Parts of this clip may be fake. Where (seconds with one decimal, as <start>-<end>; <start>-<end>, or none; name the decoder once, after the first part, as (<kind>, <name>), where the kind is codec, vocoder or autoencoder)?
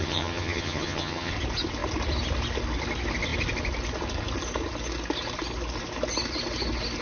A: 0.0-1.3 (vocoder, HiFi-GAN)